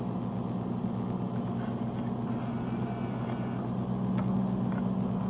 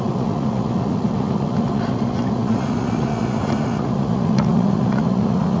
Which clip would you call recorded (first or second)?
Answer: first